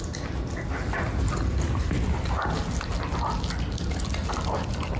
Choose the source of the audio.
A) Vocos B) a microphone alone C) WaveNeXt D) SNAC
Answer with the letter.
B